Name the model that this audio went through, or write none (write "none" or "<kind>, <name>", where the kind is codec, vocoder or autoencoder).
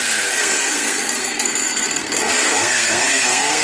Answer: codec, SNAC